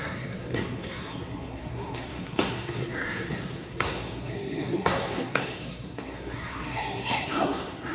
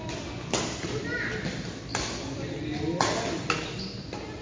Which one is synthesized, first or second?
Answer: first